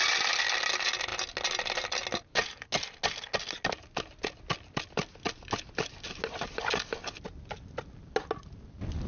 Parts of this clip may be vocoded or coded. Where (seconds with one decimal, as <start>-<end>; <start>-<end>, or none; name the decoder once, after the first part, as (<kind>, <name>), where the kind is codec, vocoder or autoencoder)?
none